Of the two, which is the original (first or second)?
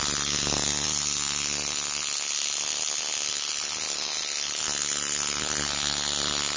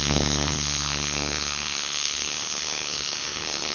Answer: first